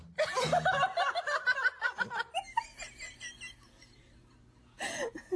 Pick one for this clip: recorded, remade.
recorded